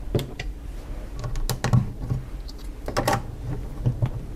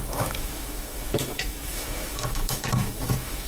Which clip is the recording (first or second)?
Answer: first